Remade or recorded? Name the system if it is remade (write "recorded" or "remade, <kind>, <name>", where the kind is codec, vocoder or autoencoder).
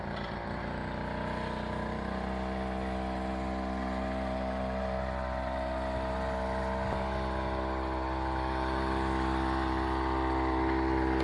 recorded